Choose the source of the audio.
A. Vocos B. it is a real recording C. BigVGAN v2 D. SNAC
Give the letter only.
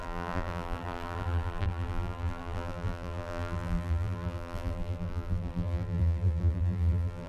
C